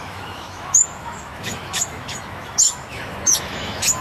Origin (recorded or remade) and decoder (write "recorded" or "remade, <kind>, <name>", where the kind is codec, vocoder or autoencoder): remade, autoencoder, DAC-VAE